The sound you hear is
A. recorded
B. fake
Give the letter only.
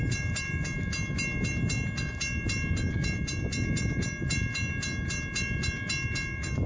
A